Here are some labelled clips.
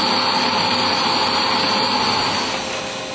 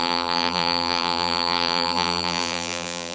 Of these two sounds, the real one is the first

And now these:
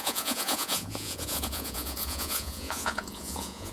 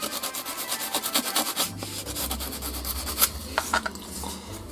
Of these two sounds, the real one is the second